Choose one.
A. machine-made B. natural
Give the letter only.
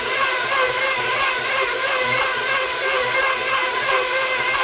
B